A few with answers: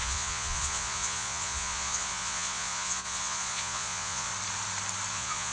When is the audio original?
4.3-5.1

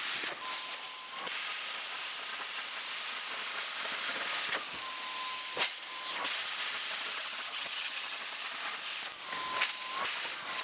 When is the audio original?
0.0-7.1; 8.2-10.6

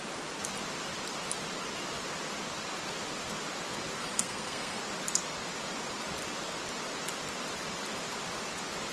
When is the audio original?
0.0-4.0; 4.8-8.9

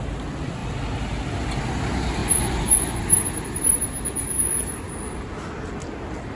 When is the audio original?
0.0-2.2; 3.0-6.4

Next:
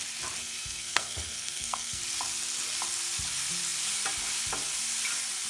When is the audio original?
0.0-0.4; 2.0-5.5

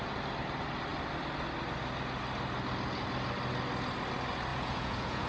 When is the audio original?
0.0-4.5